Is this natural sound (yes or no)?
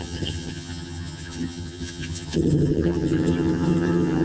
no